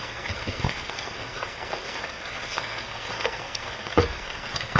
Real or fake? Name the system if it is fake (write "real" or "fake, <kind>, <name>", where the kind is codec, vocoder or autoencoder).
fake, codec, SNAC